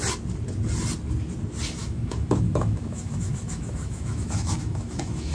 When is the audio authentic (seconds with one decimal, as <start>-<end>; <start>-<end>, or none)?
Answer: 0.0-1.8